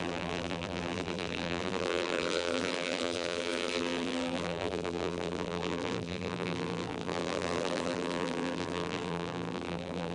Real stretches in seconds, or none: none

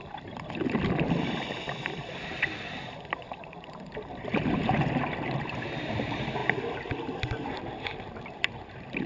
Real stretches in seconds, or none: none

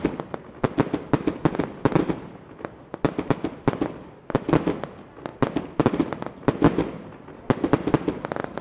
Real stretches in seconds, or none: 0.0-1.4; 2.8-8.6

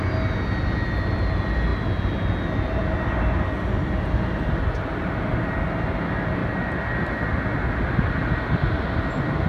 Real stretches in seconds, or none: 0.0-9.5

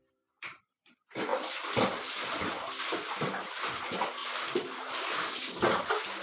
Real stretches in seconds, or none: 0.0-6.2